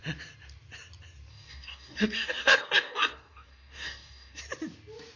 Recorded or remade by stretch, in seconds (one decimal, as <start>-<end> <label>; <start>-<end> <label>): 0.0-1.3 recorded; 1.3-4.4 remade; 4.4-5.2 recorded